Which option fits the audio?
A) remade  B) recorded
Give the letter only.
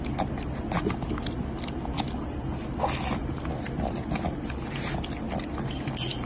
B